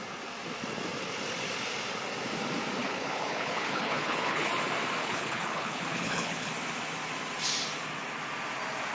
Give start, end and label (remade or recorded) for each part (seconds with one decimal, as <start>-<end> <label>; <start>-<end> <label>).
0.0-2.8 recorded; 2.8-4.5 remade; 4.5-5.0 recorded; 5.0-6.5 remade; 6.5-8.9 recorded